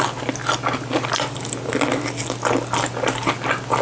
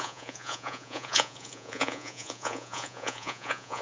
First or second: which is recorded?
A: first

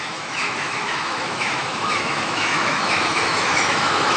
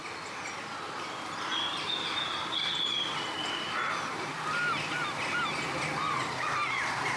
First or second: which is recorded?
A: second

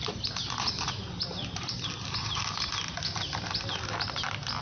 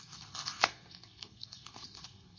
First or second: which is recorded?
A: first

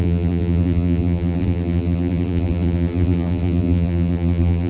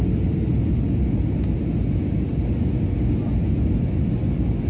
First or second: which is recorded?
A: second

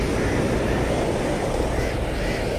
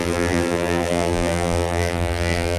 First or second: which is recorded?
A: first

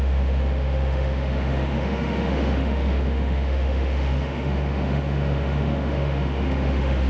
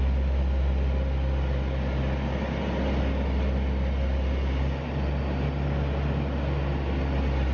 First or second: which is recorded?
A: second